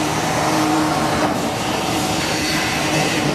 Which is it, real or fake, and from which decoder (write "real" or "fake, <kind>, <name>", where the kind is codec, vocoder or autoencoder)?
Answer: fake, vocoder, BigVGAN v2